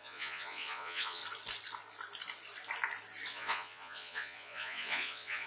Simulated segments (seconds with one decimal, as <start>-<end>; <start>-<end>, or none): 0.0-1.2; 3.3-5.5